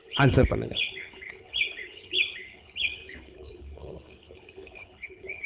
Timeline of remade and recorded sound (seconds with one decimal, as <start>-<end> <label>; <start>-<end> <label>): 0.0-5.5 remade